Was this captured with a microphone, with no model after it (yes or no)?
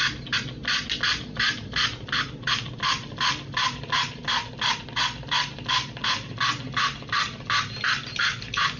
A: yes